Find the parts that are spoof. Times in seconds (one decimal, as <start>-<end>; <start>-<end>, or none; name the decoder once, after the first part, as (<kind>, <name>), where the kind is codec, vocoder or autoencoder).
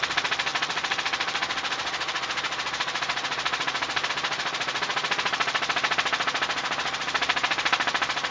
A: none